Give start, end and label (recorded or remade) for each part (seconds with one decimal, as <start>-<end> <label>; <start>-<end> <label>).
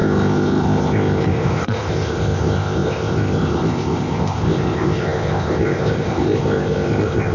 0.0-7.3 remade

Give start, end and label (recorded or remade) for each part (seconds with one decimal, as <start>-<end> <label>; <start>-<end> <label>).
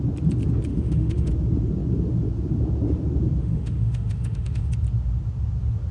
0.0-0.7 recorded; 0.7-1.3 remade; 1.3-3.4 recorded; 3.4-4.7 remade; 4.7-5.9 recorded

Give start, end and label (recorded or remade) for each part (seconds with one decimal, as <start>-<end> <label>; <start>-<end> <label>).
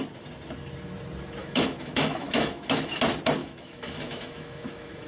0.0-1.4 recorded; 1.4-3.0 remade; 3.0-3.4 recorded; 3.4-5.1 remade